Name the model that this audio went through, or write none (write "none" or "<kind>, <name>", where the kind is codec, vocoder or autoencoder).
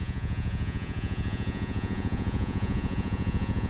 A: vocoder, Vocos